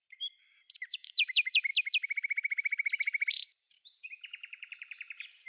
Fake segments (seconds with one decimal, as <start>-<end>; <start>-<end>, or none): 0.0-1.7; 3.3-5.5